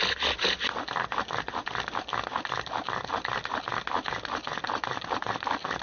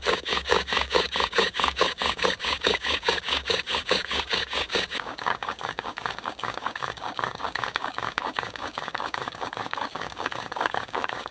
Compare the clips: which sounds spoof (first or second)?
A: second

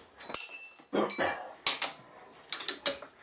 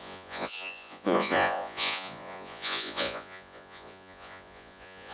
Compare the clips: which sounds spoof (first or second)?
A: second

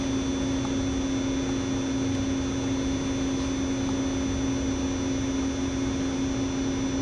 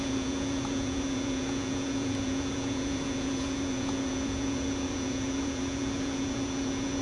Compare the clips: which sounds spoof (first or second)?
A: second